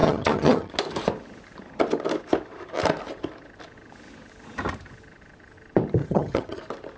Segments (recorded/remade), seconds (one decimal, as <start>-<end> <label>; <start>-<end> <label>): 0.0-0.7 remade; 0.7-6.0 recorded; 6.0-6.6 remade; 6.6-7.0 recorded